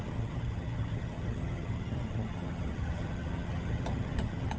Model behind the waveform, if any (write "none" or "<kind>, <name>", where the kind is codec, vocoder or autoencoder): vocoder, HiFi-GAN